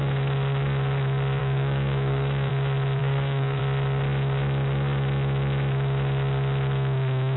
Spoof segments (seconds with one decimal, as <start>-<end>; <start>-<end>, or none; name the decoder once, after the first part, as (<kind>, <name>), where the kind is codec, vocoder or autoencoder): 1.4-2.5 (codec, DAC); 3.0-3.6